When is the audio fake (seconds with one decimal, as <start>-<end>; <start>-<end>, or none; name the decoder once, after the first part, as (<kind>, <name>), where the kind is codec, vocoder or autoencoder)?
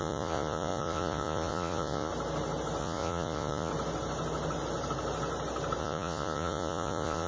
0.0-2.1 (vocoder, Vocos); 2.8-3.7; 5.8-7.3